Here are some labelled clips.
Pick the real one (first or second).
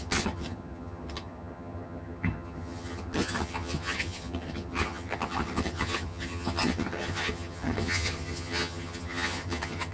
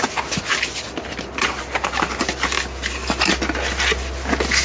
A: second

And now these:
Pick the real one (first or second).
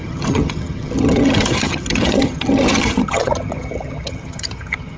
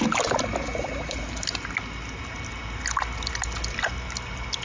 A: second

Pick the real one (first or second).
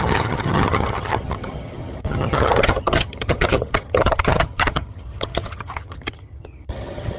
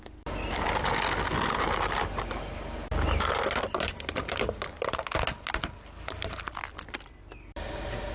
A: second